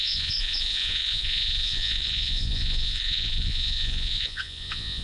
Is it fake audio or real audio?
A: fake